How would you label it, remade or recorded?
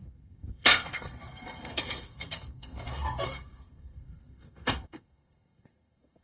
remade